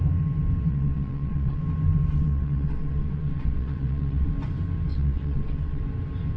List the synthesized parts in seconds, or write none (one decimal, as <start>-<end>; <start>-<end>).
0.7-1.6; 2.1-4.3; 4.9-5.8